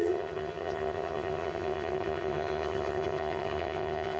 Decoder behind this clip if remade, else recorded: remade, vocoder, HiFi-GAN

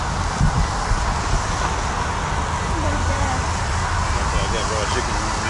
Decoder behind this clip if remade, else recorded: recorded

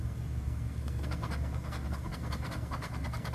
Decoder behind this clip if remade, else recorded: remade, codec, SNAC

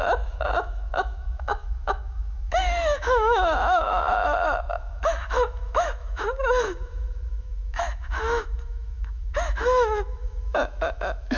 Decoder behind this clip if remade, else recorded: remade, autoencoder, DAC-VAE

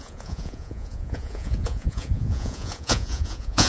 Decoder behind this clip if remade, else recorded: remade, vocoder, Vocos